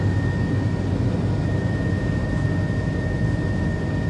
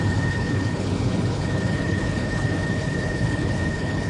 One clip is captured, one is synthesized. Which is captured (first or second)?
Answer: first